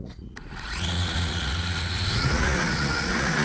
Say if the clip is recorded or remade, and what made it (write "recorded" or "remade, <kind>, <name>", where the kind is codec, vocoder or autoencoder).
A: remade, vocoder, Vocos